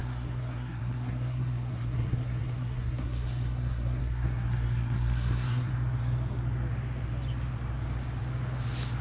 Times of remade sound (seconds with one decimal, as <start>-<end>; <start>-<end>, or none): 0.0-5.7